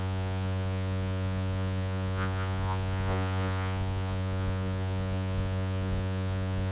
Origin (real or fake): fake